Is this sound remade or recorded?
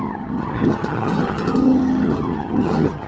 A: remade